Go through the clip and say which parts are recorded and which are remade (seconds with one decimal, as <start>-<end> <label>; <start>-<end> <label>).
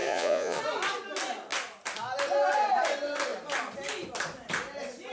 0.0-0.6 remade; 0.6-5.1 recorded